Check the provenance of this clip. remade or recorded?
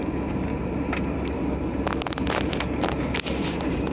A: recorded